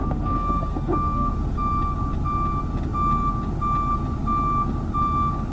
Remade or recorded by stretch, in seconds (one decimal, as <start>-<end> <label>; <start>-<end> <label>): 0.0-1.3 remade; 1.3-5.5 recorded